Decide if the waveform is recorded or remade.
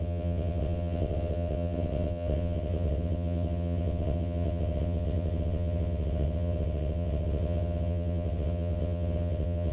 remade